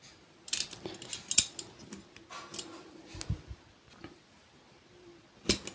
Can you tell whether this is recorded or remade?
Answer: recorded